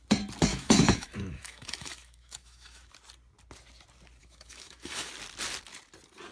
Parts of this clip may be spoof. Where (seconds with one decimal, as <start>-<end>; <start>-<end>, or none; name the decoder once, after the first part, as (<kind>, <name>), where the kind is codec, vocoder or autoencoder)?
0.5-2.9 (autoencoder, DAC-VAE); 4.2-5.1

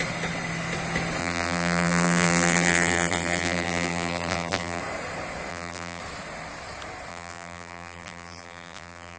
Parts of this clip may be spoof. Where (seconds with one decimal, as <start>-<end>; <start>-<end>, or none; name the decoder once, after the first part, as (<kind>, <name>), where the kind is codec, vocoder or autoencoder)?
1.2-4.8 (vocoder, BigVGAN v2); 5.5-6.0; 7.1-9.2

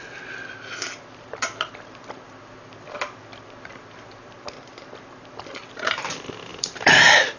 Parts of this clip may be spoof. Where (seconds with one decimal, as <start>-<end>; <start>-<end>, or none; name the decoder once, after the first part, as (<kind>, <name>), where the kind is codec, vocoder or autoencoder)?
6.5-7.0 (vocoder, BigVGAN v2)

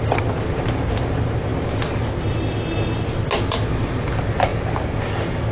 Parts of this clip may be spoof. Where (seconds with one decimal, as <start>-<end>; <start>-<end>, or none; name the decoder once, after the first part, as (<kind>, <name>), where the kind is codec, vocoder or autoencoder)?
none

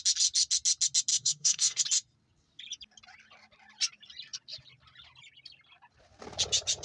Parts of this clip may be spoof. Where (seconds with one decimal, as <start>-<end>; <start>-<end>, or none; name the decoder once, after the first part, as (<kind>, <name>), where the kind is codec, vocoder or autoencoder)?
1.1-1.8 (codec, SNAC)

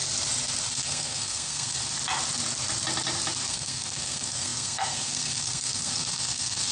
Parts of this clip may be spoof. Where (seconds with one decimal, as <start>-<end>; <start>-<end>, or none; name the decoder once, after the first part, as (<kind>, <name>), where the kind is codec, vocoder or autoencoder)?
0.7-1.8 (codec, SNAC); 3.5-6.7

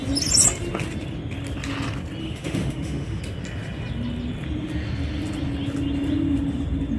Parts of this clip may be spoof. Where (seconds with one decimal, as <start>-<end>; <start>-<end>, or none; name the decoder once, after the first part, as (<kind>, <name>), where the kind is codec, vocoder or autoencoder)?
2.2-3.2 (autoencoder, DAC-VAE)

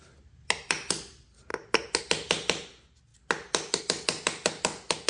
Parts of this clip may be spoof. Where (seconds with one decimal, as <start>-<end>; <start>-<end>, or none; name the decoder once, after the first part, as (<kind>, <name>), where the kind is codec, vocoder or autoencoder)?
none